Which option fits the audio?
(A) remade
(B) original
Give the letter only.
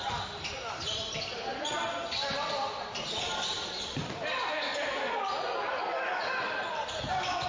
B